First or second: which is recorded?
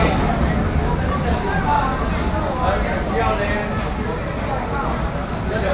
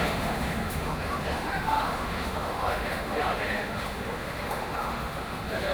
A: first